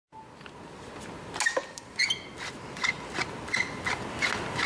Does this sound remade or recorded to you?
recorded